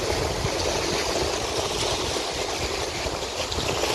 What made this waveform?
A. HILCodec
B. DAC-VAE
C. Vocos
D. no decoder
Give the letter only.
D